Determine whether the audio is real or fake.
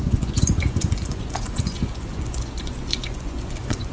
fake